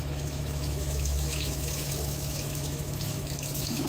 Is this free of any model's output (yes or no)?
no